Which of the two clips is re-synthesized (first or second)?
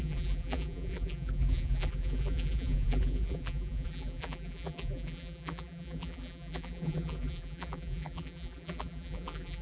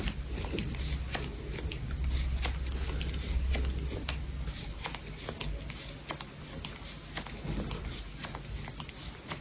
first